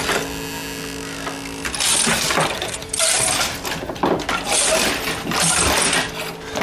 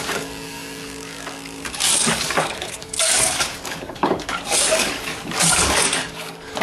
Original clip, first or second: first